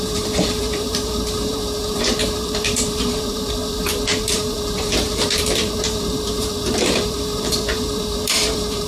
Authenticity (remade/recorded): remade